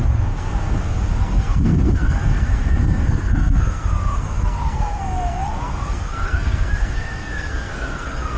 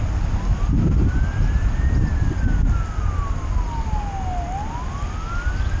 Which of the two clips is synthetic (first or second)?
first